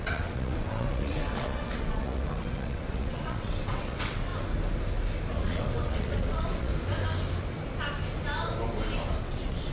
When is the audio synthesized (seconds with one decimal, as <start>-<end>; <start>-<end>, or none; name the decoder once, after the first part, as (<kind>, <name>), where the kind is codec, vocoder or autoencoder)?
0.0-4.3 (vocoder, WaveNeXt); 5.4-6.7; 9.2-9.7